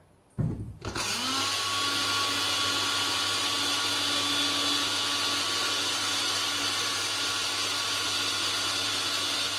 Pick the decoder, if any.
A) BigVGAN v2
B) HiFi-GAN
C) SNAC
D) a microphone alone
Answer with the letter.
D